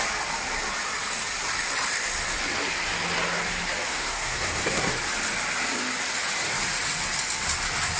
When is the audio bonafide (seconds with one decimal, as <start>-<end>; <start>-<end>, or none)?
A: 0.0-3.9; 4.9-8.0